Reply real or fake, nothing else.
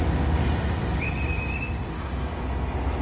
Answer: real